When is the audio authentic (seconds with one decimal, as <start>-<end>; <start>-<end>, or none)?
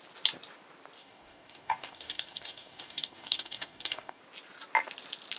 0.0-1.0; 4.2-5.4